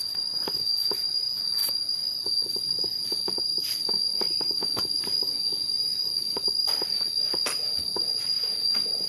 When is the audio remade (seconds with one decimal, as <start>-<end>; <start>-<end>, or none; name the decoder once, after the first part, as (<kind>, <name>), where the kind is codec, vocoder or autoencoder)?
4.1-5.0 (vocoder, BigVGAN v2); 5.9-7.3